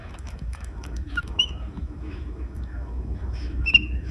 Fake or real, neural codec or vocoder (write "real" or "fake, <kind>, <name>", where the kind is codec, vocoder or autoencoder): fake, autoencoder, DAC-VAE